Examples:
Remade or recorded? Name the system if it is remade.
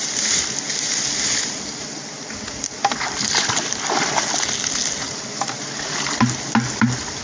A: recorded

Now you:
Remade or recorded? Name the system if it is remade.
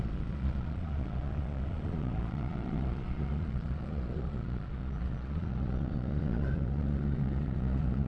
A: remade, vocoder, Vocos